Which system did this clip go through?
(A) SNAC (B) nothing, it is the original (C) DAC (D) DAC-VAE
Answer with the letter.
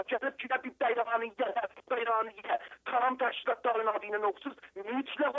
B